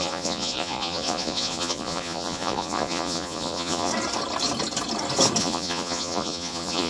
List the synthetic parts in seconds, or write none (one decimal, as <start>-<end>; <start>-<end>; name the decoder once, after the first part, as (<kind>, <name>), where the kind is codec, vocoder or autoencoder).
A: 0.0-3.9 (vocoder, Vocos); 5.4-6.9